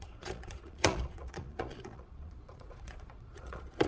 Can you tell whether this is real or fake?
fake